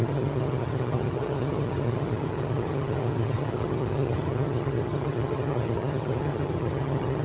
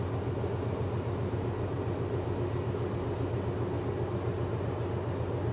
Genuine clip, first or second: second